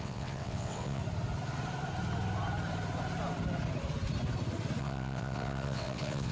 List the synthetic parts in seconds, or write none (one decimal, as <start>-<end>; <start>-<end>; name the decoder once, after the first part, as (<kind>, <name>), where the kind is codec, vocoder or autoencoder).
0.0-1.0 (vocoder, WaveNeXt); 4.8-6.3